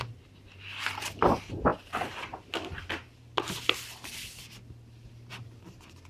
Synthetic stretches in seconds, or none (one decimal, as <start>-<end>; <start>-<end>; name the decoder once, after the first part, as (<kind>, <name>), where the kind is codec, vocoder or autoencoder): 0.0-1.0 (vocoder, BigVGAN v2); 1.7-5.3